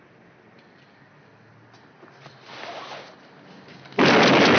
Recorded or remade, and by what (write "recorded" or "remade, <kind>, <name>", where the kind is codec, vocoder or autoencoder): recorded